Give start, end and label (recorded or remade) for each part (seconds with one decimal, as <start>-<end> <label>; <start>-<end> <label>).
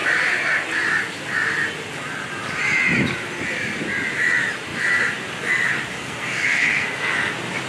0.0-5.9 recorded; 5.9-7.3 remade; 7.3-7.7 recorded